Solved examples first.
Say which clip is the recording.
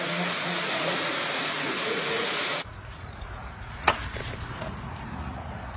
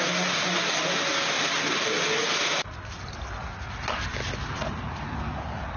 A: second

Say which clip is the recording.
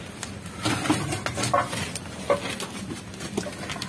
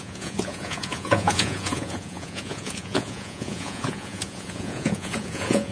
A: first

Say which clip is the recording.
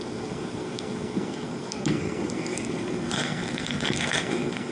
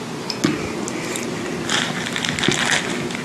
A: second